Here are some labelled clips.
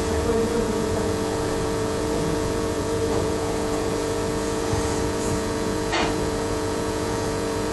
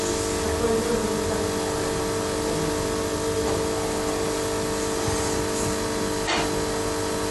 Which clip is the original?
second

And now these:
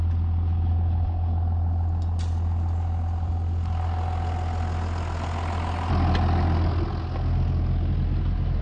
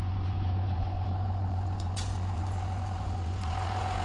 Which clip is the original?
first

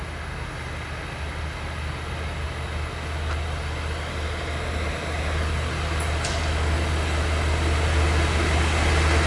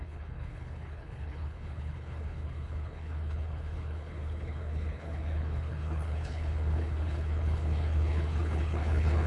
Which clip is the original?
first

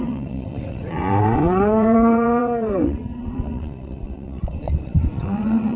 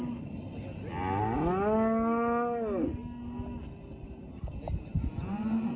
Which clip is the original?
second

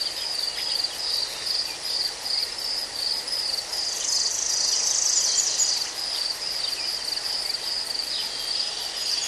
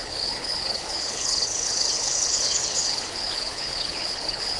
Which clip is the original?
first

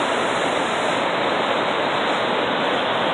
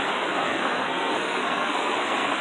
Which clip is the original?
first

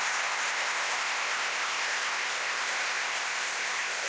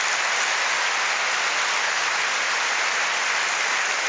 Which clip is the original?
second